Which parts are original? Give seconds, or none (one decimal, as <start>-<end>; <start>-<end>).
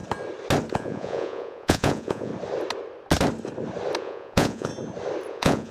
0.0-0.7; 2.3-4.0; 4.7-5.3